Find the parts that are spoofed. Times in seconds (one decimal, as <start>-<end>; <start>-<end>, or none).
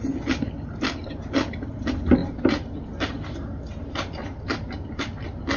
none